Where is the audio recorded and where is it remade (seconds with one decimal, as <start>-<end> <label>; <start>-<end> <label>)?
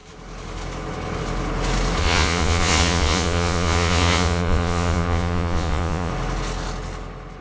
0.0-2.0 recorded; 2.0-6.1 remade; 6.1-7.4 recorded